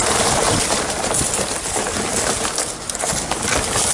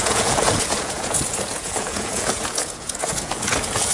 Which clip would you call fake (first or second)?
second